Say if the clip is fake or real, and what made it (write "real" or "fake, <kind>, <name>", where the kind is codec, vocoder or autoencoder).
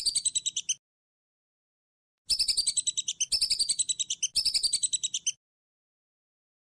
real